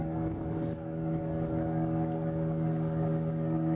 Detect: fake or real fake